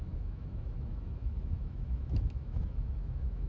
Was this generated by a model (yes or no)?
yes